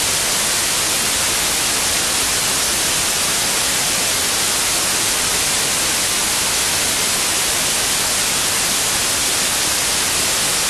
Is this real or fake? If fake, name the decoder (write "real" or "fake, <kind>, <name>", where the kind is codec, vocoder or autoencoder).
real